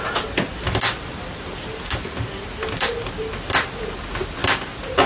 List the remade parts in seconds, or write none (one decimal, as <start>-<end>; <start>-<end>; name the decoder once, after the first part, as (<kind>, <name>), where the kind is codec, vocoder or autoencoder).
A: none